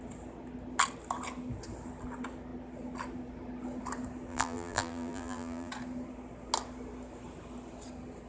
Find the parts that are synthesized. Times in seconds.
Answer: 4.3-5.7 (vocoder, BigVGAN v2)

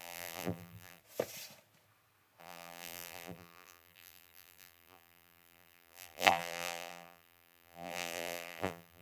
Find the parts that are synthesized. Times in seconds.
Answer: 0.0-1.0 (vocoder, BigVGAN v2); 2.4-9.0

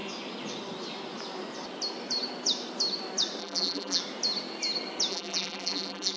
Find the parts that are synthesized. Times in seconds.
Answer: 3.4-4.0 (vocoder, BigVGAN v2); 5.1-6.2

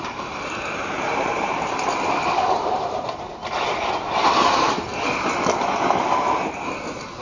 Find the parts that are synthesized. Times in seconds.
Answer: 0.0-3.4 (vocoder, BigVGAN v2); 4.2-4.9; 6.0-7.2